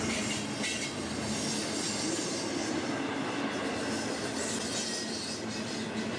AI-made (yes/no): no